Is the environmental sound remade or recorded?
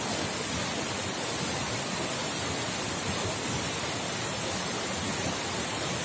recorded